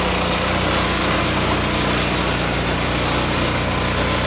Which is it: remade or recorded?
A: recorded